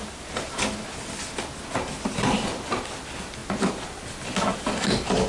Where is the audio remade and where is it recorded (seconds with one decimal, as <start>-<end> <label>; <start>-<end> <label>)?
0.0-5.3 recorded